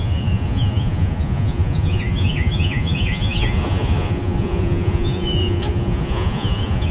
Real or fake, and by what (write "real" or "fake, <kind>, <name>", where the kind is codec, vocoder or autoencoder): fake, vocoder, Vocos